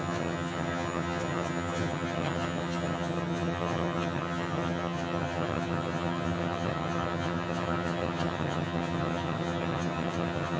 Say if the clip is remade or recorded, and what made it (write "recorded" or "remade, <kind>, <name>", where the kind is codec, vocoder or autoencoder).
remade, vocoder, HiFi-GAN